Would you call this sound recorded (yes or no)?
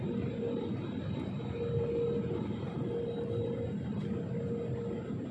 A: yes